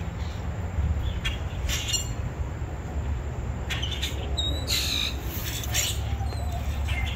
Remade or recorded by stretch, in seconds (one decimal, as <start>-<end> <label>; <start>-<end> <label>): 0.0-7.2 recorded